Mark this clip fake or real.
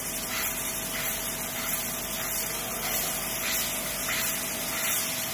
real